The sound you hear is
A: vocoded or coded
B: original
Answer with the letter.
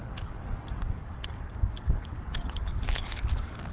A